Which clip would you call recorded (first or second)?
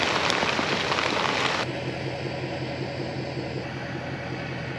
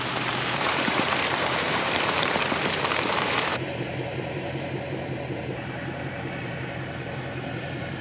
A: first